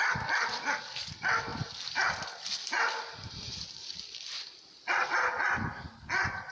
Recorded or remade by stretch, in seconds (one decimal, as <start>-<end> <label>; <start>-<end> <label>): 0.0-1.5 recorded; 1.5-5.1 remade; 5.1-6.5 recorded